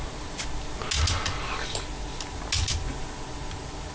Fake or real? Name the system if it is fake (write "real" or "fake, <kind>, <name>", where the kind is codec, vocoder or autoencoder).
real